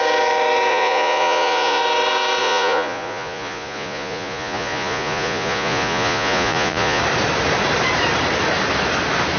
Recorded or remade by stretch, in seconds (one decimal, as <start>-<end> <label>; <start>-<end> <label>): 0.0-0.7 recorded; 0.7-1.8 remade; 1.8-2.4 recorded; 2.4-7.0 remade; 7.0-9.4 recorded